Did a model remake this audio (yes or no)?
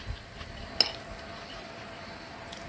no